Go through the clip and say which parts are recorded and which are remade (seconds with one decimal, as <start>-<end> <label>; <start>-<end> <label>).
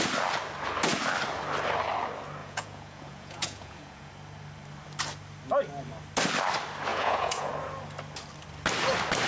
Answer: 0.0-2.4 recorded; 2.4-4.1 remade; 4.1-6.9 recorded; 6.9-7.5 remade; 7.5-9.3 recorded